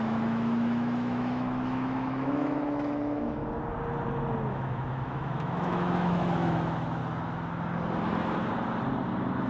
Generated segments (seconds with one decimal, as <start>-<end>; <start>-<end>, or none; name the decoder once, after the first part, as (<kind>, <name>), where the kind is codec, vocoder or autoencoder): 0.0-3.4 (autoencoder, DAC-VAE); 4.5-7.0